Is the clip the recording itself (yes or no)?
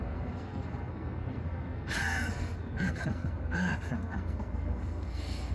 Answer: no